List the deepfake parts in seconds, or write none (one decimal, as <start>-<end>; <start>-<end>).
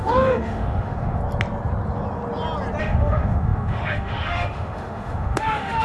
0.0-1.2; 2.8-5.8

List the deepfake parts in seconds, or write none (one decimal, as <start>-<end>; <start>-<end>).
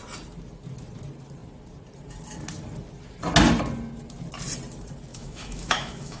5.1-6.2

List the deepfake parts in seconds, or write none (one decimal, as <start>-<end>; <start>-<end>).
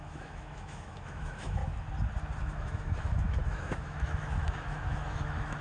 0.0-1.6; 2.4-5.6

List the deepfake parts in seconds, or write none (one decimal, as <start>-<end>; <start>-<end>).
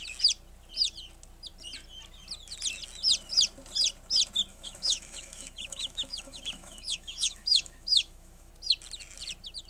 4.5-8.5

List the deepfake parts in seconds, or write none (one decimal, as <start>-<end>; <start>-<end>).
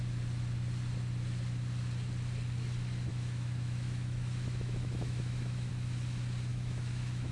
3.1-5.7; 6.5-7.3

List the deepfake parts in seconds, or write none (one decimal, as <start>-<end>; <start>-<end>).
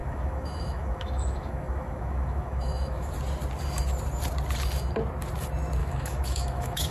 0.0-3.1; 5.8-6.9